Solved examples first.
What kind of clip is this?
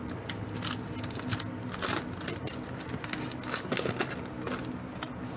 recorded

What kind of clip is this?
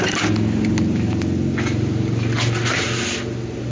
recorded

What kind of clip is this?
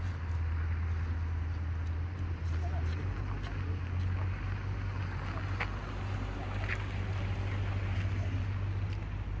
recorded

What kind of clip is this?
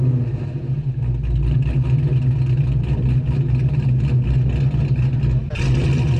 recorded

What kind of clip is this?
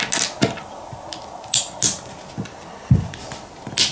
recorded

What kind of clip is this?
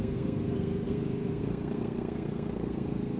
remade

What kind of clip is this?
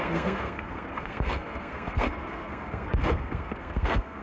remade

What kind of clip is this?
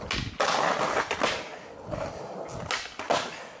recorded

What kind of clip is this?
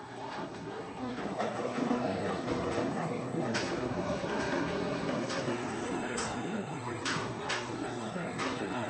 remade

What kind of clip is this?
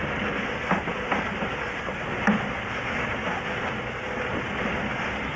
recorded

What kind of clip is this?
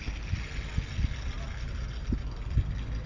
recorded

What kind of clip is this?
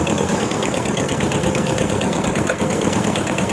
remade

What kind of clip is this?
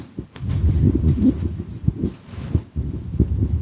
recorded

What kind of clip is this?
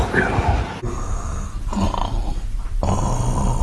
recorded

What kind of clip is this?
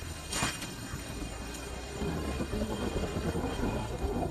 remade